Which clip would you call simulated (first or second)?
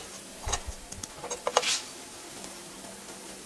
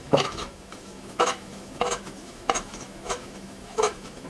second